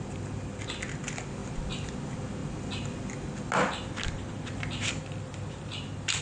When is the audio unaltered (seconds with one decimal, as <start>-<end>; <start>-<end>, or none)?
0.0-6.2